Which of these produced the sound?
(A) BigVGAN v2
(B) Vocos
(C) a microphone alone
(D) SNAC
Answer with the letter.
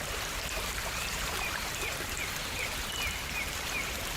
A